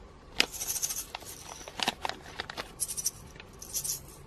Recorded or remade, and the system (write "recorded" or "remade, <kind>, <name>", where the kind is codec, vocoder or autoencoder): recorded